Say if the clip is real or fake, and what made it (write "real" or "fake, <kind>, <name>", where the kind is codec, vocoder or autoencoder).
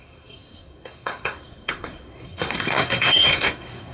fake, codec, SNAC